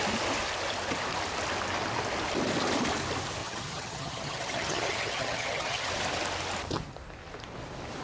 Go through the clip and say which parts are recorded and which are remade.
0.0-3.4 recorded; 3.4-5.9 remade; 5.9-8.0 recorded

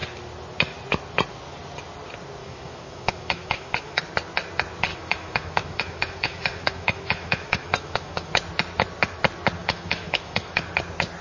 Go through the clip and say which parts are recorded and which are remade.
0.0-2.4 recorded; 2.4-4.0 remade; 4.0-4.9 recorded; 4.9-8.3 remade; 8.3-9.6 recorded; 9.6-10.6 remade; 10.6-11.2 recorded

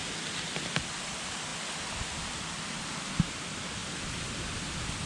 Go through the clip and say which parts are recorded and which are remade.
0.0-5.1 recorded

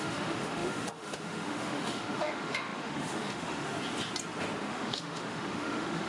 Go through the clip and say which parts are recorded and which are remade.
0.0-3.7 remade; 3.7-4.6 recorded; 4.6-6.1 remade

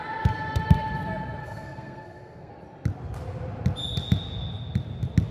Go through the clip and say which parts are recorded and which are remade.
0.0-1.4 recorded; 1.4-2.5 remade; 2.5-5.3 recorded

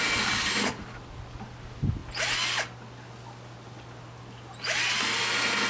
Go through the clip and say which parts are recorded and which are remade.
0.0-5.7 recorded

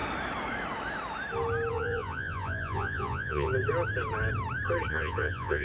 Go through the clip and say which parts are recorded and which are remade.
0.0-1.7 recorded; 1.7-3.5 remade; 3.5-4.9 recorded; 4.9-5.6 remade